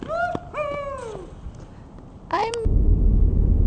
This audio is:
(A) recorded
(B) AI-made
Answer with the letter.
A